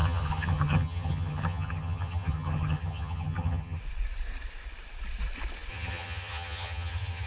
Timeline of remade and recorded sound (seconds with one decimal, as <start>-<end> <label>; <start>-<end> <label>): 0.0-3.8 remade; 3.8-5.7 recorded; 5.7-7.3 remade